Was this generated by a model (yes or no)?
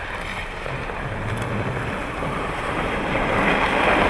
yes